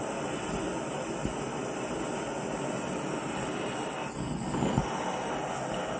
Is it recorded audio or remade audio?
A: recorded